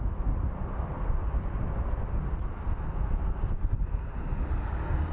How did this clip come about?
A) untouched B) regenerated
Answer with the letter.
A